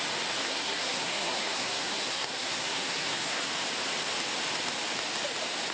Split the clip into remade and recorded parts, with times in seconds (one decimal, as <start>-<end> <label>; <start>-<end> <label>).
0.0-0.4 recorded; 0.4-3.5 remade; 3.5-5.7 recorded

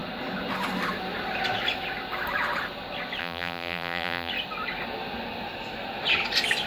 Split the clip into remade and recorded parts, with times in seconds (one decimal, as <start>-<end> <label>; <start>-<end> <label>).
0.0-3.2 recorded; 3.2-4.3 remade; 4.3-6.7 recorded